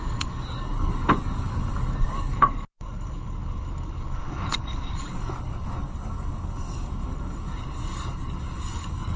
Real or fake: fake